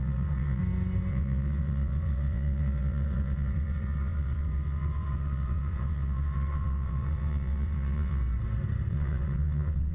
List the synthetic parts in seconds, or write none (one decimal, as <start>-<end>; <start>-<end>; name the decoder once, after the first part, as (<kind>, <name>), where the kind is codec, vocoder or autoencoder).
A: 0.0-0.6 (vocoder, WaveNeXt); 1.1-8.2; 8.9-9.9